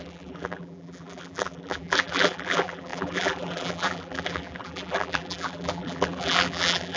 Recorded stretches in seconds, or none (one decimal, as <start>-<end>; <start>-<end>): none